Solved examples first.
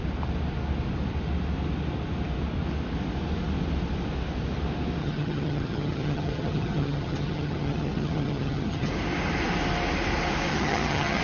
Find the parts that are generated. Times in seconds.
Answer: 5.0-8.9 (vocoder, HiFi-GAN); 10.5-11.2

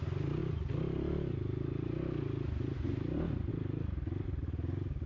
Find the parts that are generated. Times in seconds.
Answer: none

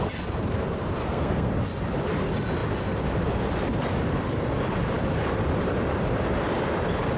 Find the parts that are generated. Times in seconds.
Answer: 1.0-1.5 (codec, SNAC)

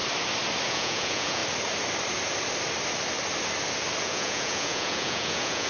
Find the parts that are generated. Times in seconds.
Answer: 0.7-1.4 (vocoder, Vocos); 4.0-5.7

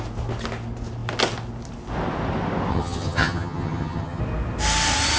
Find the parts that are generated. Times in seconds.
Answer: 2.7-4.2 (vocoder, HiFi-GAN)

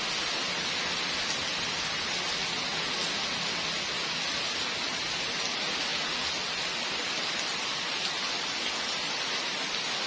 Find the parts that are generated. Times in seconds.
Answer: none

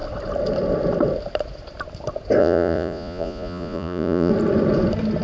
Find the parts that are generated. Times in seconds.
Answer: 2.4-4.3 (vocoder, Vocos)